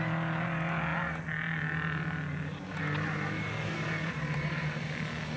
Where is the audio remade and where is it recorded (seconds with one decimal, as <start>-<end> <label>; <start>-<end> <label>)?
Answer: 0.0-5.4 recorded